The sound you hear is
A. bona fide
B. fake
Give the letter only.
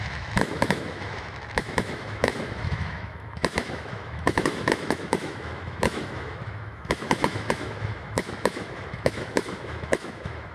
B